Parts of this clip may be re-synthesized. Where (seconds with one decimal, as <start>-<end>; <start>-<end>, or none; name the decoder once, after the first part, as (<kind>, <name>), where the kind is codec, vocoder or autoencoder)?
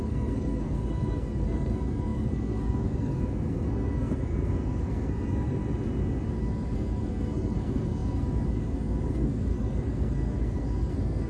0.0-5.6 (codec, SNAC); 6.4-11.3